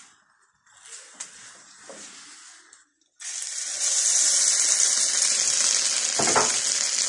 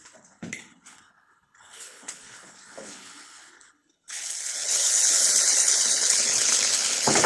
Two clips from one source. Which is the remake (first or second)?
second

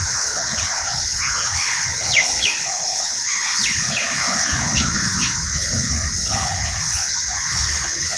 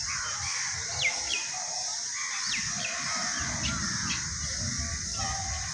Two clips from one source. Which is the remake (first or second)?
first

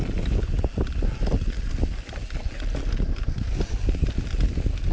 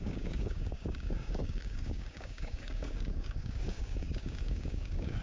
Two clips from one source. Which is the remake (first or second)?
second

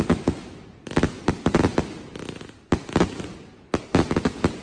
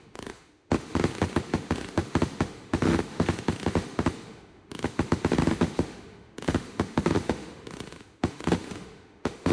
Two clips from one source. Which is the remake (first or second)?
second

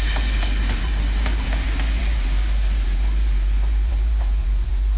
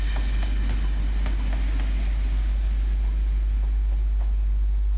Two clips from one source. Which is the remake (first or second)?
first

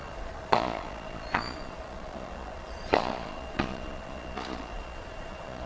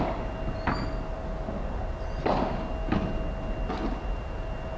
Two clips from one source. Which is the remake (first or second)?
first